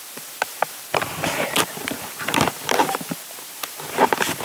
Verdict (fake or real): fake